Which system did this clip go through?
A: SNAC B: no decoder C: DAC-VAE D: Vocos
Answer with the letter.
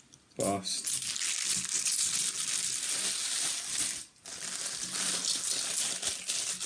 B